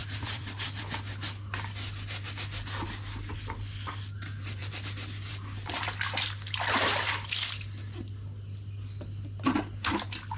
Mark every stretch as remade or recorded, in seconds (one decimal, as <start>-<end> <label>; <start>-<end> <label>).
0.0-0.8 remade; 0.8-10.4 recorded